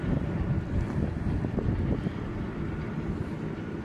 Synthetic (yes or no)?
yes